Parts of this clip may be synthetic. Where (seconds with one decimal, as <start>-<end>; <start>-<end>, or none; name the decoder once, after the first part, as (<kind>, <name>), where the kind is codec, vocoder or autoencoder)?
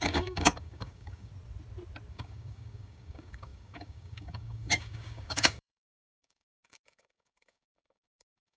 0.0-1.3 (codec, DAC); 2.1-8.6